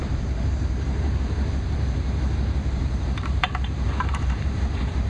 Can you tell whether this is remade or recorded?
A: remade